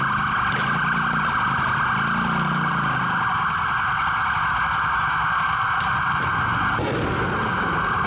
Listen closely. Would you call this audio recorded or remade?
recorded